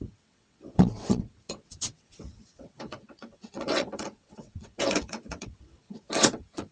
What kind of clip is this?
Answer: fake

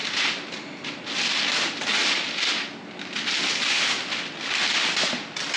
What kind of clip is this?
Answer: real